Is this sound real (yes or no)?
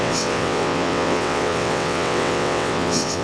no